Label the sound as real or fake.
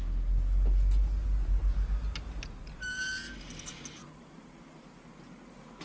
real